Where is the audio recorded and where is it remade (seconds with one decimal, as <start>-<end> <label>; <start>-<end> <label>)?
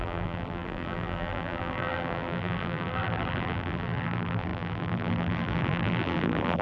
0.0-6.6 remade